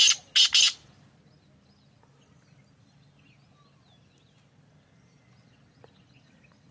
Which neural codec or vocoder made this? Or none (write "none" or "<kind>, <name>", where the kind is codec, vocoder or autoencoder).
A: none